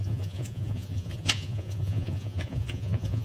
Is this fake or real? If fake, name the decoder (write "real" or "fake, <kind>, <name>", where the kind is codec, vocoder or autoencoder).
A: fake, vocoder, Vocos